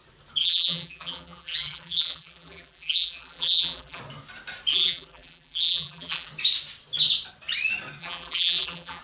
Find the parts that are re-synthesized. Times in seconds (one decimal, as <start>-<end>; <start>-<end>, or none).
0.4-4.0; 4.7-6.3; 8.0-9.0